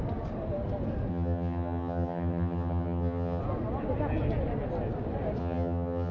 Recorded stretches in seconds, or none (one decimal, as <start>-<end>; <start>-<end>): 0.0-1.1; 3.4-5.4